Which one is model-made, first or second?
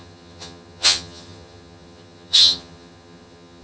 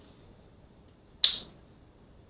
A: first